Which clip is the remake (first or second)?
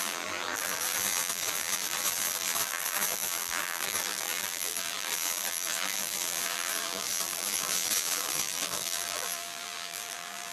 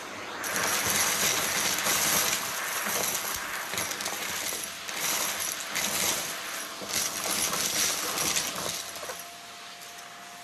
first